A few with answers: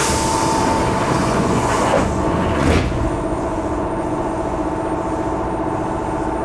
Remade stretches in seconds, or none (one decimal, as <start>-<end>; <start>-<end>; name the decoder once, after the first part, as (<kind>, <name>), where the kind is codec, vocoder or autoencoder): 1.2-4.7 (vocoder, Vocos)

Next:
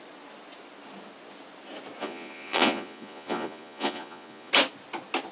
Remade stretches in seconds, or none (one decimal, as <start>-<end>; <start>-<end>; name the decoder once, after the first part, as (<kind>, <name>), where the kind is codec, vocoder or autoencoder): 2.0-4.5 (vocoder, Vocos)

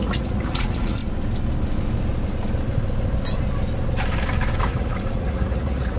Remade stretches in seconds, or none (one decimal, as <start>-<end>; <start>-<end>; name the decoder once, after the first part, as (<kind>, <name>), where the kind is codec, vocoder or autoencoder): 0.0-1.0 (vocoder, Vocos); 4.6-6.0